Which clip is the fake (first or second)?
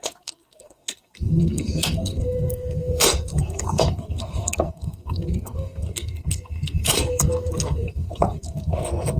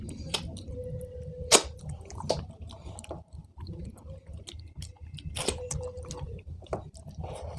first